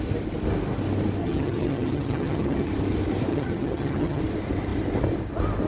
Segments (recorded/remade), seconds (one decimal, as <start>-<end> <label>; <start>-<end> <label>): 0.0-1.2 recorded; 1.2-2.7 remade; 2.7-3.3 recorded; 3.3-4.2 remade; 4.2-5.7 recorded